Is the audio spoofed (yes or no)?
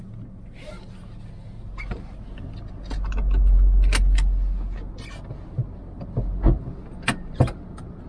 no